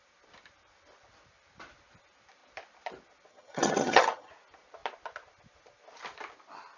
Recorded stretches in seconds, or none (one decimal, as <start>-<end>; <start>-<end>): 0.0-3.3; 4.3-6.8